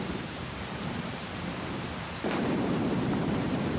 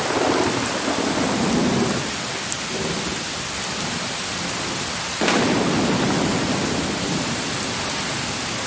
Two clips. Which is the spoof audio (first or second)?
first